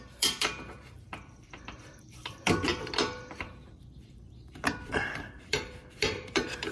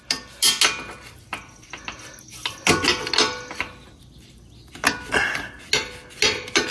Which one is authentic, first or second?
second